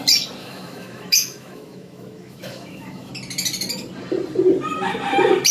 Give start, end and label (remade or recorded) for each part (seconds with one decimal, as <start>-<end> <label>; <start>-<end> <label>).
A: 0.0-0.4 recorded; 0.4-3.1 remade; 3.1-5.5 recorded